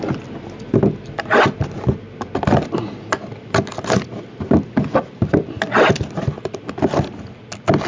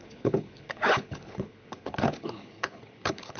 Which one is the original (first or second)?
first